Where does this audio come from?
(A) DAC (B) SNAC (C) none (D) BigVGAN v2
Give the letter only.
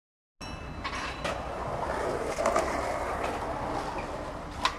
C